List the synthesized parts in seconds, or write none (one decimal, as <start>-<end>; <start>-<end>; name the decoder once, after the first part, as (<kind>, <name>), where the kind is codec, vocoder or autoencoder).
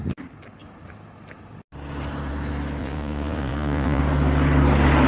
2.8-4.0 (vocoder, Vocos)